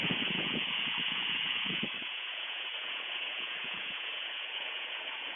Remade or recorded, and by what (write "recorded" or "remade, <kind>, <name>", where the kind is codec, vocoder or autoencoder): remade, vocoder, Vocos